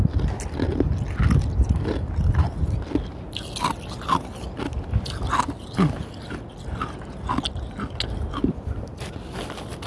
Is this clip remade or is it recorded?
recorded